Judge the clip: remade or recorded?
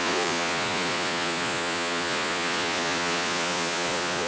remade